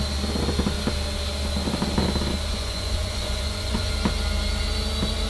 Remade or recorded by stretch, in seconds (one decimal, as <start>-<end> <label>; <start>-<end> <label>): 0.0-2.5 recorded; 2.5-3.9 remade; 3.9-5.3 recorded